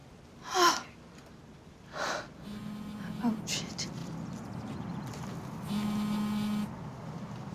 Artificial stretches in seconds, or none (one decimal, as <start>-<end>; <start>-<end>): none